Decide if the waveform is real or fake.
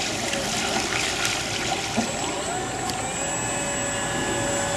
real